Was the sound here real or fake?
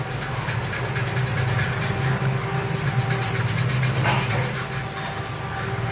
real